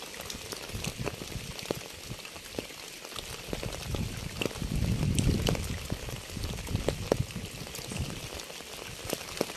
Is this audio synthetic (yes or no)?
no